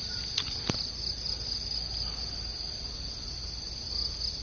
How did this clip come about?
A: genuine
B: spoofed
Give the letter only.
A